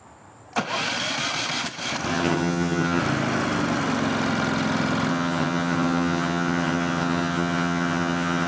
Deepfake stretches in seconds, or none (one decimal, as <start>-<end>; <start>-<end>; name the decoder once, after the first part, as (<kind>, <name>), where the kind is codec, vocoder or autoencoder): 2.1-3.0 (vocoder, HiFi-GAN); 5.1-8.5